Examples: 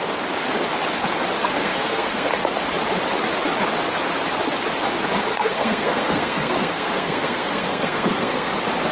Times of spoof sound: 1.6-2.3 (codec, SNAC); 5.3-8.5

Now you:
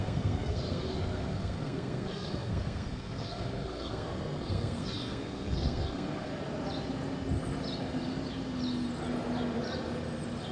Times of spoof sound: 0.0-6.3 (codec, SNAC)

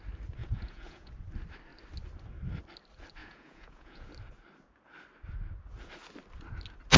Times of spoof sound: 0.4-1.1 (vocoder, Vocos); 3.2-4.1

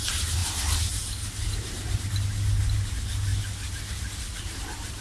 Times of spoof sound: none

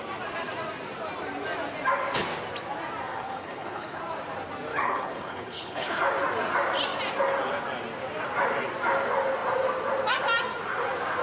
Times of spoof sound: 3.1-4.0 (codec, HILCodec); 4.7-6.0